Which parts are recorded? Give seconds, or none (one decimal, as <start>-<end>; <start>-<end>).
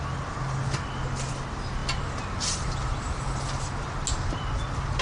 0.0-5.0